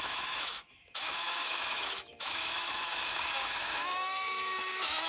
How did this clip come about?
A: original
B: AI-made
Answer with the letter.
B